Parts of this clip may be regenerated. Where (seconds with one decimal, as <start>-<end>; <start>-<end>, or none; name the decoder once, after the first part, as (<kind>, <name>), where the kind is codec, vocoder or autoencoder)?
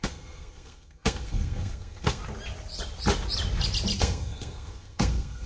0.0-2.2 (codec, SNAC); 4.0-5.5